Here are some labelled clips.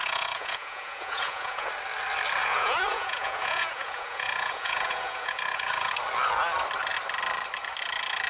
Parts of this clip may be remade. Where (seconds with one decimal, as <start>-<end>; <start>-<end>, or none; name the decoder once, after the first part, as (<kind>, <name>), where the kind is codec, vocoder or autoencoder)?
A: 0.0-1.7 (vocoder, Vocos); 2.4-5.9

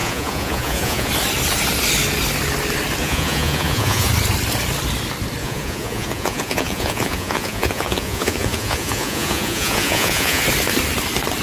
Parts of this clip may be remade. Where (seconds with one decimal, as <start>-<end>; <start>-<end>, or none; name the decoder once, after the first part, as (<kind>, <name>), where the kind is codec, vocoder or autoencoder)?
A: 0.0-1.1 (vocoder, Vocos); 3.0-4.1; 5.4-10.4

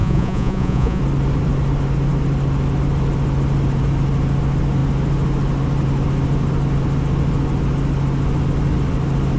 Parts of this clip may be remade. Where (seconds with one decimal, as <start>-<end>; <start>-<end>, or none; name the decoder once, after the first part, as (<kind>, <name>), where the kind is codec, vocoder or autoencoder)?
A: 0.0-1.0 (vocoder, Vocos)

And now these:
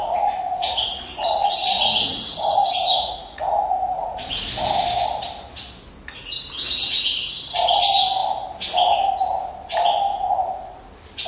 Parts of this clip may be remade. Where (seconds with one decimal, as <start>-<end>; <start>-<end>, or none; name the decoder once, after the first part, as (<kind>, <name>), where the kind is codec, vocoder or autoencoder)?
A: 0.0-4.5 (vocoder, Vocos); 10.1-10.8